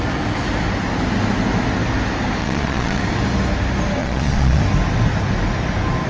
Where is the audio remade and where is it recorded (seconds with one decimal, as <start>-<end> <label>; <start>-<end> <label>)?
0.0-2.4 recorded; 2.4-3.0 remade; 3.0-4.0 recorded; 4.0-4.6 remade; 4.6-6.1 recorded